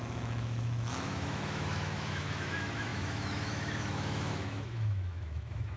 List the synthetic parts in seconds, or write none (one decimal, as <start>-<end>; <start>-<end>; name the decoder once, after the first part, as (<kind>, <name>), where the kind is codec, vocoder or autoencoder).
0.0-5.8 (autoencoder, DAC-VAE)